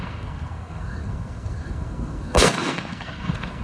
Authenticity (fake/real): fake